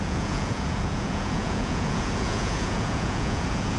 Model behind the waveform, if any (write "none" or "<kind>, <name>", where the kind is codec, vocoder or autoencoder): vocoder, Vocos